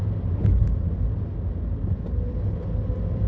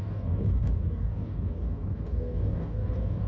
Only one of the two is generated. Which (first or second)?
second